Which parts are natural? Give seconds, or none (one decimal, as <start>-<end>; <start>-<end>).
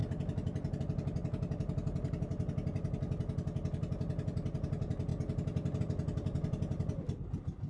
0.0-7.7